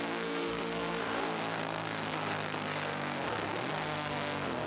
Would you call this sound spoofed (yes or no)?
yes